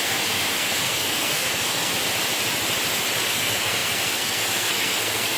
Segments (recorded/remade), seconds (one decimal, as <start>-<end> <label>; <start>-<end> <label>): 0.0-1.9 remade; 1.9-3.2 recorded; 3.2-5.4 remade